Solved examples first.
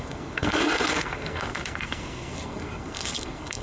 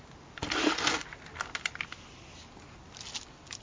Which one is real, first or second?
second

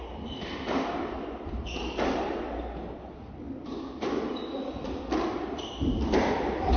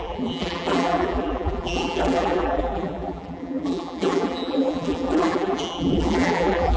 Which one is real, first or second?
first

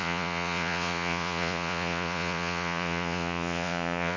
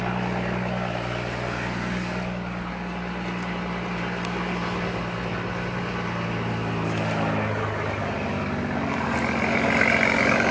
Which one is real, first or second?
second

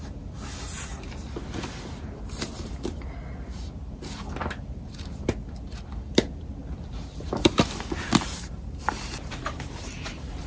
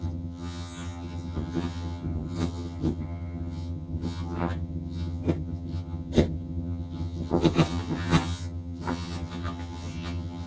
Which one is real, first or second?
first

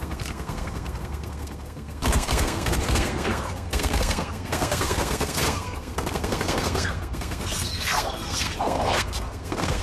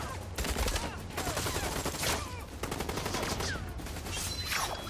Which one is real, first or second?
second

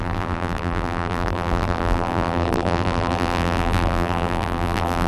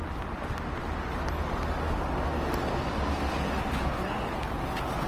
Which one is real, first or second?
second